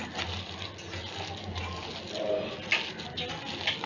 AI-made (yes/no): no